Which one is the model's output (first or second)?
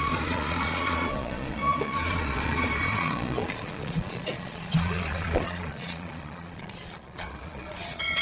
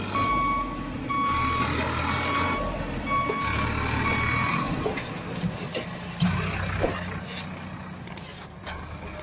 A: first